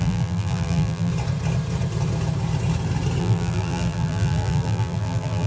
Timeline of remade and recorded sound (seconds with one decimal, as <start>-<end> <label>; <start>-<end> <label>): 0.0-1.1 remade; 1.1-3.2 recorded; 3.2-5.5 remade